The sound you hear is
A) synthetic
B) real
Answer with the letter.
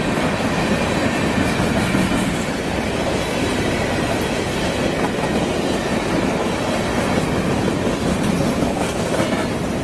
B